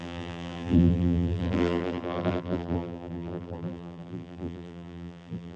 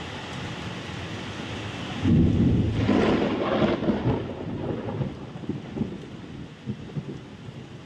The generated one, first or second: first